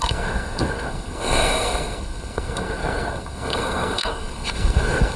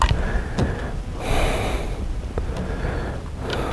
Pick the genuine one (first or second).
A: second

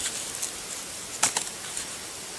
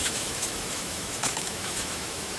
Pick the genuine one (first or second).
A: first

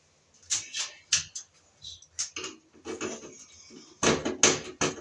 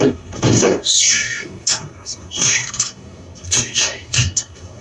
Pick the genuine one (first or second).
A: first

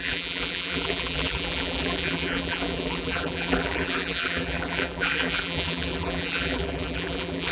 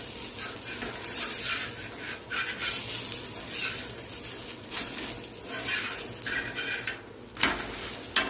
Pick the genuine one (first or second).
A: second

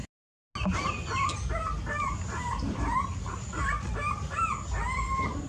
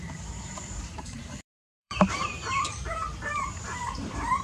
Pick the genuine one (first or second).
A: first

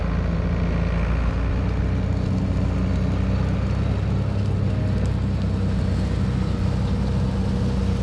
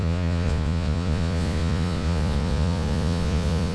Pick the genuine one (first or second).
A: first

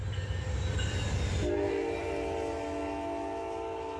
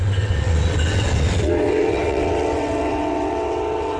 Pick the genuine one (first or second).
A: first